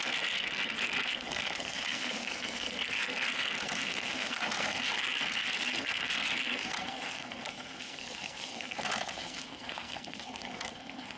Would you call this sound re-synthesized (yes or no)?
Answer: yes